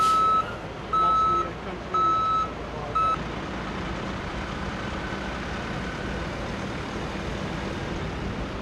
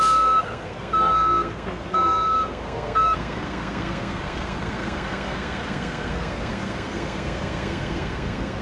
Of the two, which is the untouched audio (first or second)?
first